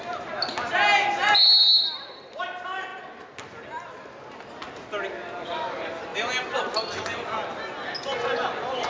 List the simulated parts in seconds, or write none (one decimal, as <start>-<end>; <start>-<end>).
none